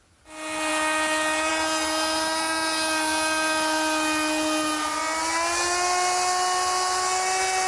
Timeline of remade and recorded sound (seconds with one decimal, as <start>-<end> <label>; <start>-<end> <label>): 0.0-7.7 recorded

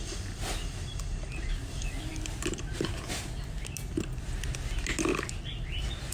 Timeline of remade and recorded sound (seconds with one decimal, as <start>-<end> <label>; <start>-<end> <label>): 0.0-6.1 recorded

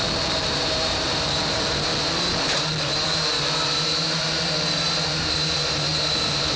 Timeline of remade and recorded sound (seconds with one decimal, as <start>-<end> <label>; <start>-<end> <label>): 0.0-1.9 remade; 1.9-2.9 recorded; 2.9-6.6 remade